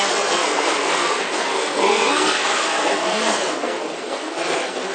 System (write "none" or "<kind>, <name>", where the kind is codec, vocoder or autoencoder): codec, SNAC